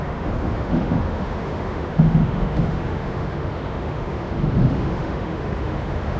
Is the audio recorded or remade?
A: remade